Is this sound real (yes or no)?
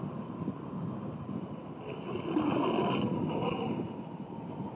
yes